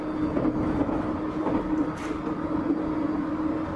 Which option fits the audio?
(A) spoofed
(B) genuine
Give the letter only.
B